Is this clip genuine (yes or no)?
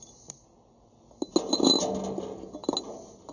yes